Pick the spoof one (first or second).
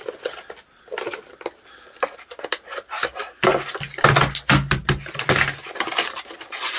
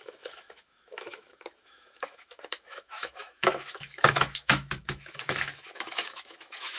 second